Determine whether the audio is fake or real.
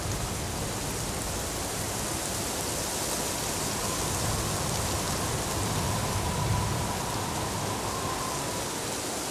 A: real